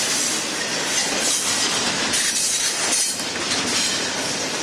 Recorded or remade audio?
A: recorded